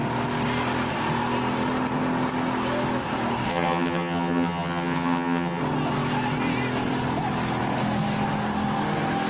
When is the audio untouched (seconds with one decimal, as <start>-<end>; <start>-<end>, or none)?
0.0-3.5; 5.6-9.3